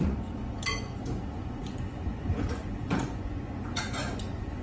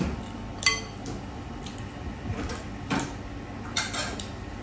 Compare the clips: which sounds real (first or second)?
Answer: second